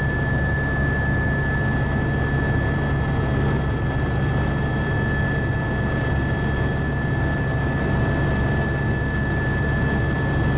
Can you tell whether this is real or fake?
real